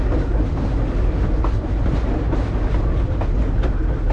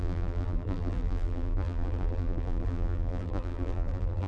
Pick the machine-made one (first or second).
second